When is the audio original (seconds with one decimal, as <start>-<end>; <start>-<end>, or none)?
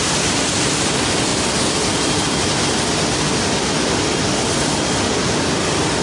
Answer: 1.3-2.9; 4.1-4.9